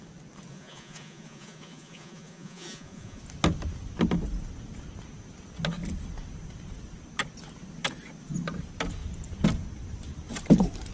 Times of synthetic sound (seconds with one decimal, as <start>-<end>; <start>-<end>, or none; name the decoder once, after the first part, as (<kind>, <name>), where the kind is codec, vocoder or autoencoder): 0.5-3.2 (vocoder, Vocos)